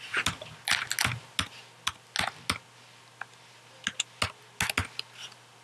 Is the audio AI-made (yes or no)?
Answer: no